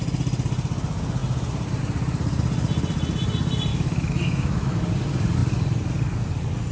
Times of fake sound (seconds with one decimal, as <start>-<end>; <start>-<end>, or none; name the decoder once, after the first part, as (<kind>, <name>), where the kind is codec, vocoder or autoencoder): 3.7-4.8 (autoencoder, DAC-VAE)